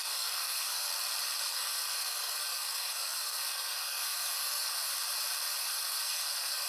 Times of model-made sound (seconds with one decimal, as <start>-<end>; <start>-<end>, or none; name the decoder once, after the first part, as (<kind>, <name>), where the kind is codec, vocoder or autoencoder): 0.0-0.9 (codec, SNAC); 1.5-4.9; 5.6-6.7